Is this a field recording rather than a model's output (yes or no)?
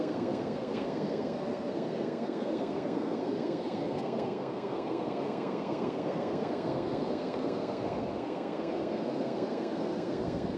no